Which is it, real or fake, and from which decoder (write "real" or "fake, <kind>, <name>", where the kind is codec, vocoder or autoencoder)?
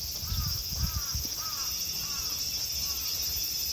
fake, vocoder, Vocos